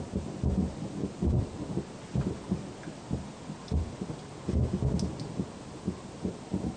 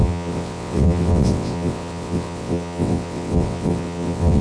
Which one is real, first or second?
first